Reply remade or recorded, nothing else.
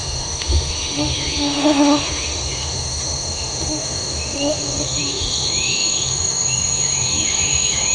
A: remade